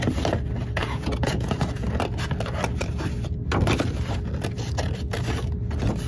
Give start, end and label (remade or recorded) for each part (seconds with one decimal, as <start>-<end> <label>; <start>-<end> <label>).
0.0-0.8 recorded; 0.8-1.5 remade; 1.5-6.1 recorded